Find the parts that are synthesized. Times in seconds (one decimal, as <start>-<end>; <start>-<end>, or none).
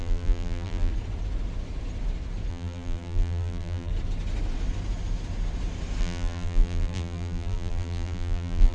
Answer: 0.0-0.9; 2.5-3.9; 6.0-8.7